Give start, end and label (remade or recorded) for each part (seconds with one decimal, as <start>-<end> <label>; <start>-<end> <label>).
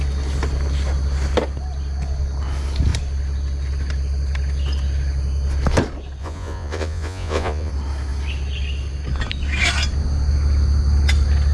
0.0-6.2 recorded; 6.2-7.7 remade; 7.7-11.5 recorded